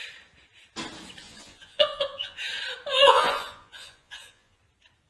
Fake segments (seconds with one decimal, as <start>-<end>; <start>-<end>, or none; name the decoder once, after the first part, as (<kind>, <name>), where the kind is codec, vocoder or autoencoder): 1.2-2.4 (vocoder, Vocos); 2.9-4.6